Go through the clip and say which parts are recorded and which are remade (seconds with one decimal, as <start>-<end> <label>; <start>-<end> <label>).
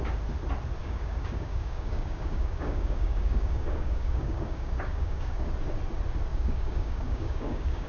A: 0.0-0.8 recorded; 0.8-5.5 remade; 5.5-6.3 recorded; 6.3-7.9 remade